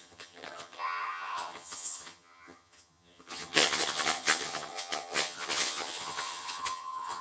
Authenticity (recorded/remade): remade